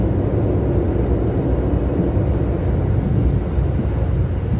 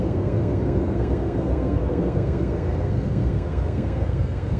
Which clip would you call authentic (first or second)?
first